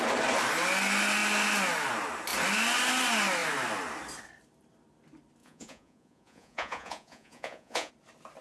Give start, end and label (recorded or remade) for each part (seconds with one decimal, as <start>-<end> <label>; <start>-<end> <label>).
0.0-5.4 recorded; 5.4-7.9 remade; 7.9-8.4 recorded

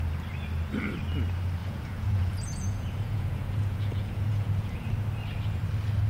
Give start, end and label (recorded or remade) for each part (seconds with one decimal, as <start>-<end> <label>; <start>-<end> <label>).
0.0-1.6 recorded; 1.6-4.9 remade; 4.9-6.1 recorded

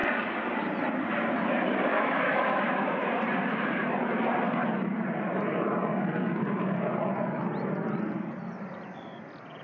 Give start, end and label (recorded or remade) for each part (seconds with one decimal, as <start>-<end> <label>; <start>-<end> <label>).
0.0-1.9 recorded; 1.9-2.6 remade; 2.6-9.6 recorded

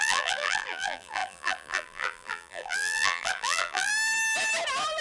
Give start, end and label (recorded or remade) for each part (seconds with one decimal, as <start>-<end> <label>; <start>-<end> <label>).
0.0-3.9 remade; 3.9-5.0 recorded

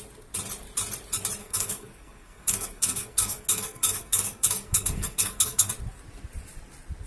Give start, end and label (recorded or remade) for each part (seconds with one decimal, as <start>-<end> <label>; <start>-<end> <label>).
0.0-1.4 recorded; 1.4-5.7 remade; 5.7-7.1 recorded

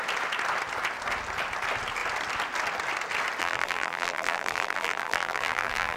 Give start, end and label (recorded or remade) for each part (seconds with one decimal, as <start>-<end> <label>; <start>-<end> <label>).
0.0-3.4 recorded; 3.4-6.0 remade